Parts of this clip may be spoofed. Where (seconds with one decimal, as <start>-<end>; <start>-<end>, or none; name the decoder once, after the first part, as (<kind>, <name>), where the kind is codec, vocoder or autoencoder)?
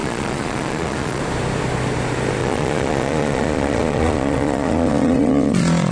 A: 0.0-1.2 (vocoder, Vocos); 2.4-5.9